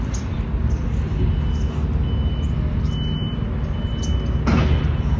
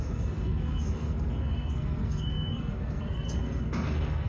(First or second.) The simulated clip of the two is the second